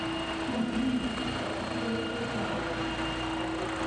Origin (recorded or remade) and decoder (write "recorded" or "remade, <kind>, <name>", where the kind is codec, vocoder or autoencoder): recorded